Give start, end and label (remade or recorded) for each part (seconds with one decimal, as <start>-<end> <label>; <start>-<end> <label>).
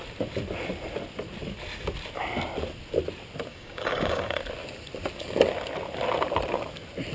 0.0-3.5 recorded; 3.5-4.4 remade; 4.4-7.1 recorded